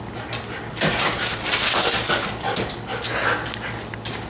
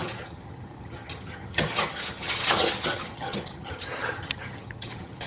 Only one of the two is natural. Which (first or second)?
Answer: first